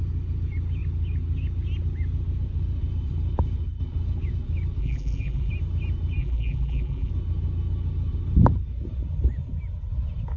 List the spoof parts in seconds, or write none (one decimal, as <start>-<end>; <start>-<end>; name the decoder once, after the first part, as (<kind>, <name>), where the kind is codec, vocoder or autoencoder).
4.8-5.5 (vocoder, BigVGAN v2); 6.2-7.1